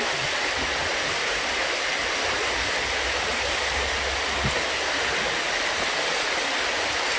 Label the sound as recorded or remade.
recorded